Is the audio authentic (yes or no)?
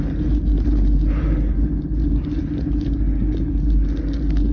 yes